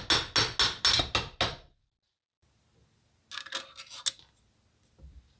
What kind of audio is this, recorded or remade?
recorded